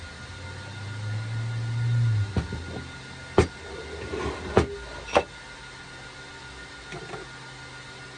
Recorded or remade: recorded